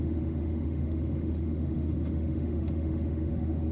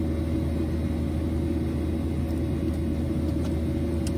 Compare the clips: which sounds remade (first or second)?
first